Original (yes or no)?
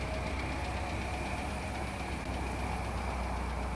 yes